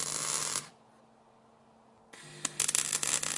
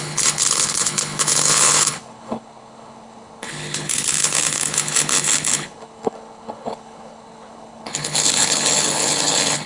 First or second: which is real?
first